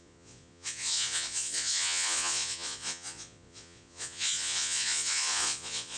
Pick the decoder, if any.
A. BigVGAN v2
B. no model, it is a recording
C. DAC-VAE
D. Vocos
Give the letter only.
D